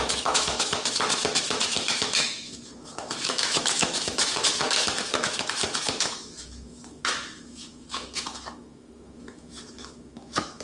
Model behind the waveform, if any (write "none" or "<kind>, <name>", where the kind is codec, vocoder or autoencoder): autoencoder, DAC-VAE